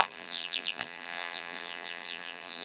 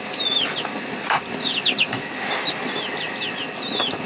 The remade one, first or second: first